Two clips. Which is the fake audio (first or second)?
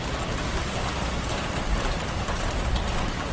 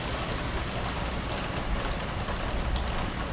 first